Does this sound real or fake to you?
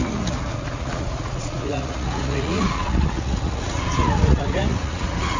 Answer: fake